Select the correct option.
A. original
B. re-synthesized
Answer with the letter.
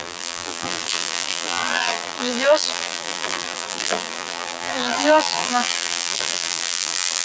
B